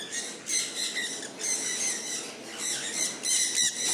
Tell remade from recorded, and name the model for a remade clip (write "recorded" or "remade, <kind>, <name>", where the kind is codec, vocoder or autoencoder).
recorded